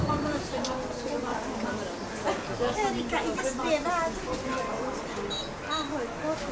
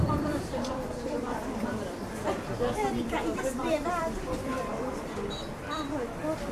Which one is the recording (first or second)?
first